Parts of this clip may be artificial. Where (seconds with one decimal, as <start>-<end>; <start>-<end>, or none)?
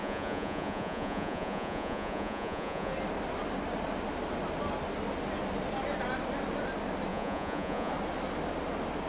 0.0-2.9; 7.1-7.9